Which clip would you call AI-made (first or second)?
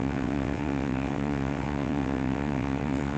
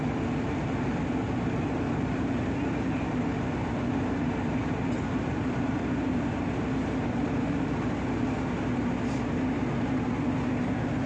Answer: first